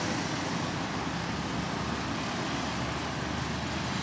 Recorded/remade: recorded